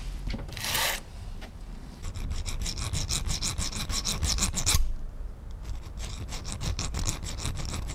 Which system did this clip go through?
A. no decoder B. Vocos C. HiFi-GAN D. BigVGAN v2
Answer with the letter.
D